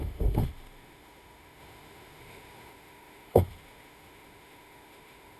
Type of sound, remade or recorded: remade